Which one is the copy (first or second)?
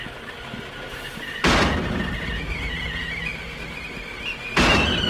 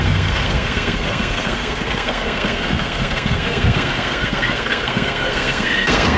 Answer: second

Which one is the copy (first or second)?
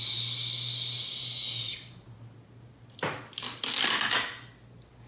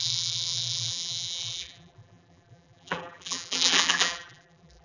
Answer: second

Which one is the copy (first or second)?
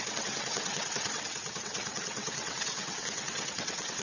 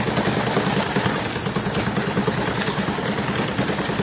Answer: first